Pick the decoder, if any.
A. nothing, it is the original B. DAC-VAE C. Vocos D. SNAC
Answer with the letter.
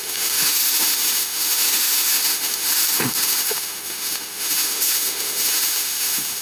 B